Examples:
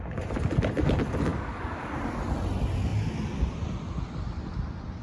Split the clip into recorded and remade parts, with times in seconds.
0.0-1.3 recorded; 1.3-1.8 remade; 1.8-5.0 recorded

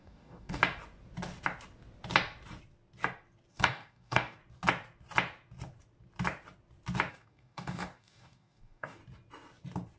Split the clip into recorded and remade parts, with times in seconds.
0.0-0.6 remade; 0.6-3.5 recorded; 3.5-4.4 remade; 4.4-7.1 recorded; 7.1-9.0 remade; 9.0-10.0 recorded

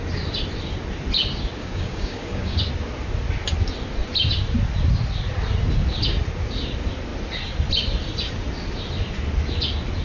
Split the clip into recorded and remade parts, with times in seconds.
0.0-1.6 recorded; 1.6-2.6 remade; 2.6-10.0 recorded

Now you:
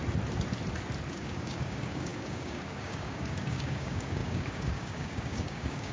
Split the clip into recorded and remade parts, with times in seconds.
0.0-1.1 recorded; 1.1-5.9 remade